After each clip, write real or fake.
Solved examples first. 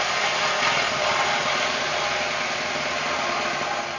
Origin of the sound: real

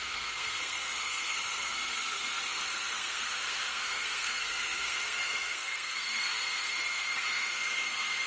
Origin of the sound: fake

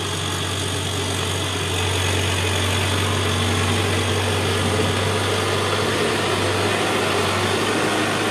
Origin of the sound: real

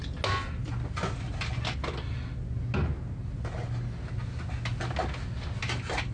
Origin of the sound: real